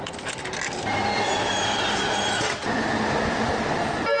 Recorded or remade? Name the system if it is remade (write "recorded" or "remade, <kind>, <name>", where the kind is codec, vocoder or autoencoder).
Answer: recorded